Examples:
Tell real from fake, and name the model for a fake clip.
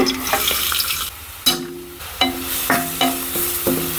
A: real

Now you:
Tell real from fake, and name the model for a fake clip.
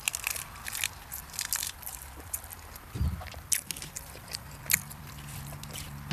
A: real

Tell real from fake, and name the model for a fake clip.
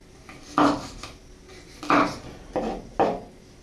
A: real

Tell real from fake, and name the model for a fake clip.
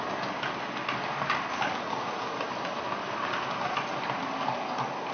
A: real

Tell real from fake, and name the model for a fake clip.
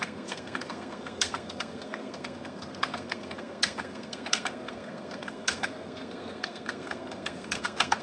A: fake, codec, SNAC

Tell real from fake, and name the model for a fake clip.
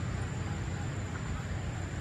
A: real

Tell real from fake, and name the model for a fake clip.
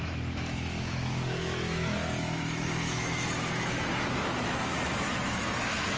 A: fake, autoencoder, DAC-VAE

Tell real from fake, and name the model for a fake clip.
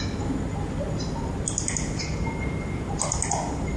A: real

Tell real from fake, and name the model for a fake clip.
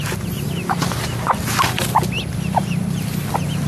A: real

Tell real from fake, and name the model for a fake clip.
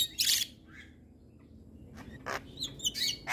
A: real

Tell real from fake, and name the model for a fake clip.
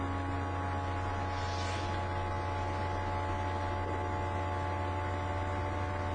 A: real